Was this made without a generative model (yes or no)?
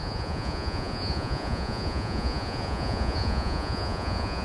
no